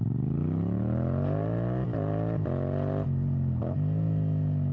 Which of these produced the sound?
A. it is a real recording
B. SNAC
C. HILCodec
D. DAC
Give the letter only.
A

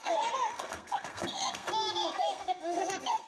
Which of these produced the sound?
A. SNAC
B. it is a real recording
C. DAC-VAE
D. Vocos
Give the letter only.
A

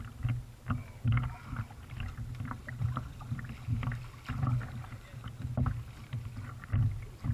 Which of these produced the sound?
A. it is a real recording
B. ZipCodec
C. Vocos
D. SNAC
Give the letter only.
A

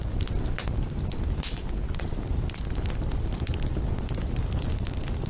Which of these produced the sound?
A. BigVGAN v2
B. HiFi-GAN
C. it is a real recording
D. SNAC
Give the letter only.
C